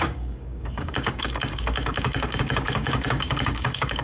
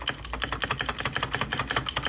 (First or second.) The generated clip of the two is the first